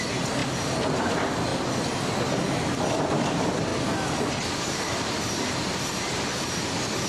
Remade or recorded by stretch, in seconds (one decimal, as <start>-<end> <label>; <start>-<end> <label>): 0.0-1.5 remade; 1.5-3.2 recorded; 3.2-3.7 remade; 3.7-7.1 recorded